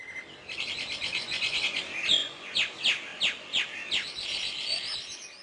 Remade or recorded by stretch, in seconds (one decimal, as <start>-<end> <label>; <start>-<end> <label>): 0.0-1.0 recorded; 1.0-1.8 remade; 1.8-2.2 recorded; 2.2-2.7 remade; 2.7-5.4 recorded